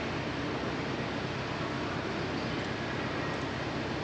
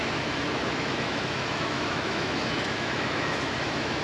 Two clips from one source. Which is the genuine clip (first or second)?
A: first